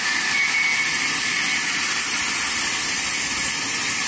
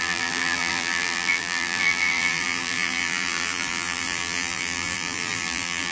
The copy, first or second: second